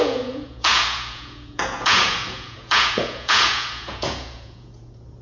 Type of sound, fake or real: fake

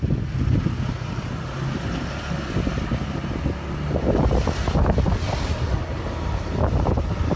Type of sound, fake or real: real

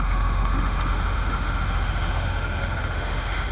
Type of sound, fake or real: fake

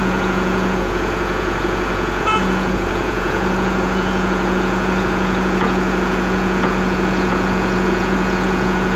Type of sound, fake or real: fake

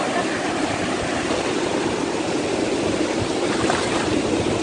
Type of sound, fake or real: fake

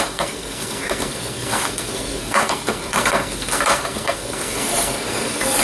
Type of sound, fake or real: fake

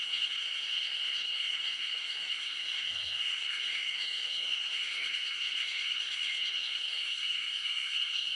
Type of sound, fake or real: fake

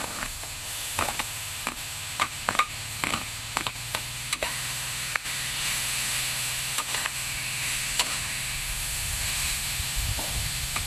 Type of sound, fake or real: fake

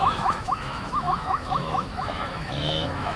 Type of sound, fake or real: fake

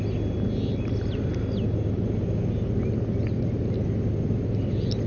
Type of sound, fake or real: real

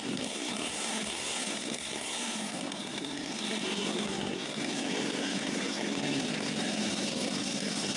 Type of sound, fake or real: fake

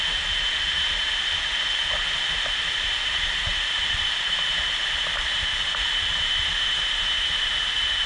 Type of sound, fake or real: real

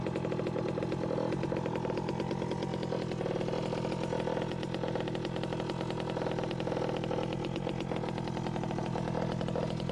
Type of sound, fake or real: real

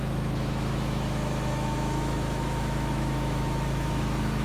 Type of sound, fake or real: fake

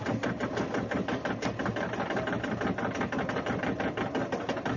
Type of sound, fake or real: real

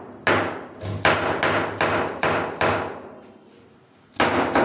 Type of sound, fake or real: real